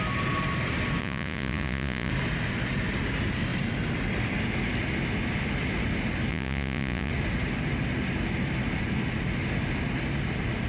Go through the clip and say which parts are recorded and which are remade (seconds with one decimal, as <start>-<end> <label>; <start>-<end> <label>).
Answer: 0.0-1.0 recorded; 1.0-2.1 remade; 2.1-6.3 recorded; 6.3-7.1 remade; 7.1-10.7 recorded